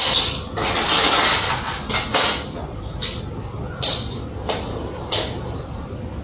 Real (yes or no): yes